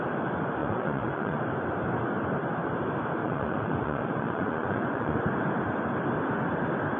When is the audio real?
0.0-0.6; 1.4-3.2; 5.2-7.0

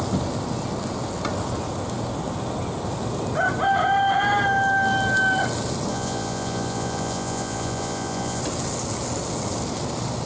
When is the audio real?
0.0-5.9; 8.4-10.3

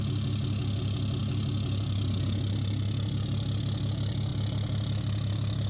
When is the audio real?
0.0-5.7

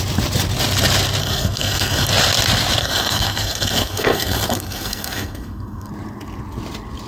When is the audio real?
0.0-1.2; 2.1-2.8; 5.9-7.1